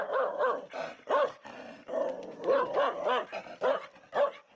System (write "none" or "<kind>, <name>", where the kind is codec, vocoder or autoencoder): none